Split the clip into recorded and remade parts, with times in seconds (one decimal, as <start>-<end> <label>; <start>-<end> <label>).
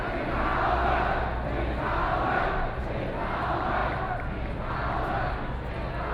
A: 0.0-6.1 recorded